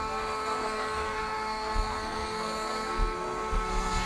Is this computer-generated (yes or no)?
yes